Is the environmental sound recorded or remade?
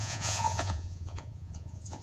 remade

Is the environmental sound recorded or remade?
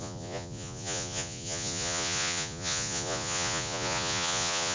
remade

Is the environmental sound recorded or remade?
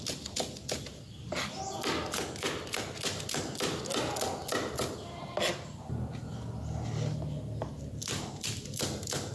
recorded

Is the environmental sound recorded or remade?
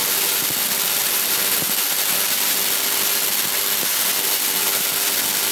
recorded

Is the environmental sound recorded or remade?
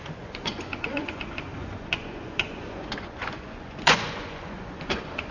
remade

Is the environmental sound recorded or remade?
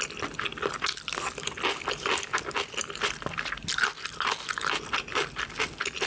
recorded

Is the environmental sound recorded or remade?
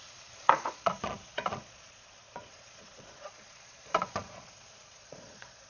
remade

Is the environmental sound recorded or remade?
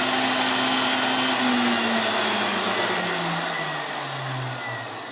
recorded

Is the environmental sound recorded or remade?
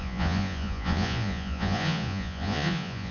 remade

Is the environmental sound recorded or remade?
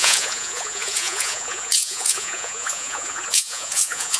remade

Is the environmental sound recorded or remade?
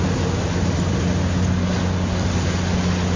recorded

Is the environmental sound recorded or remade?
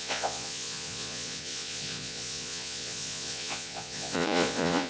remade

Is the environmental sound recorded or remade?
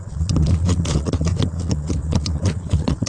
remade